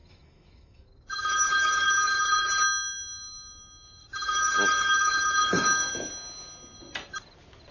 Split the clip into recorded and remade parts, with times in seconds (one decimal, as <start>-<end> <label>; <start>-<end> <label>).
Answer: 0.0-2.2 remade; 2.2-4.0 recorded; 4.0-6.1 remade; 6.1-7.7 recorded

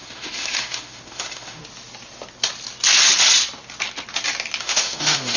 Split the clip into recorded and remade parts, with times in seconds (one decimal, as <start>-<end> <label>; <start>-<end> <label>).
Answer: 0.0-1.6 remade; 1.6-4.6 recorded; 4.6-5.4 remade